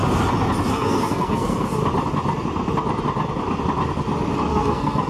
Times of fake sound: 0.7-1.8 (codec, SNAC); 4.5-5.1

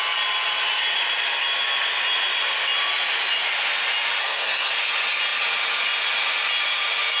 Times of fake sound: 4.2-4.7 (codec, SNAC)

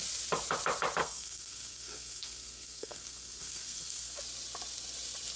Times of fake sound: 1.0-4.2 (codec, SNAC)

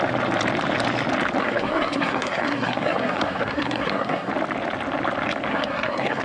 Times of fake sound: 1.4-4.3 (codec, SNAC); 5.5-6.2

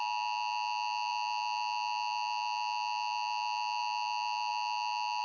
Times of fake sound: none

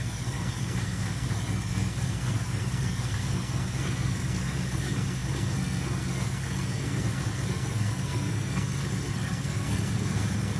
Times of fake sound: 0.0-10.6 (codec, SNAC)